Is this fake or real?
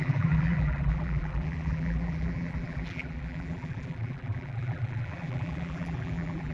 fake